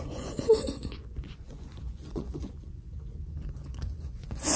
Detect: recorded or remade remade